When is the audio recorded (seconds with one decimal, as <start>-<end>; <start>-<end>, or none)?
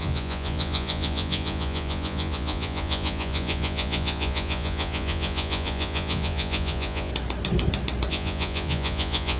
7.1-8.1